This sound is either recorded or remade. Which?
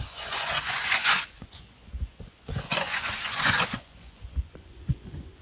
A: remade